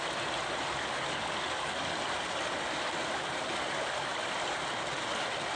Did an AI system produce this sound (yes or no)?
no